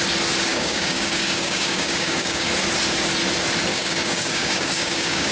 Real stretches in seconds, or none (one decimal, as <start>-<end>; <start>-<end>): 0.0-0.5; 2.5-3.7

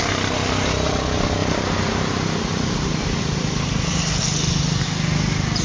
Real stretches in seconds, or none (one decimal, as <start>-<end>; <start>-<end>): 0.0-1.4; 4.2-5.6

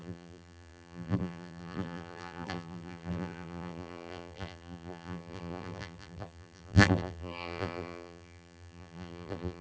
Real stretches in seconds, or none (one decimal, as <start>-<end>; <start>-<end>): none

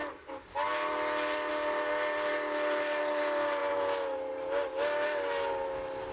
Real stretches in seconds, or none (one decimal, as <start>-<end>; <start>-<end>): 0.0-6.1